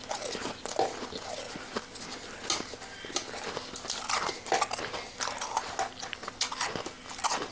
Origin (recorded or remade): recorded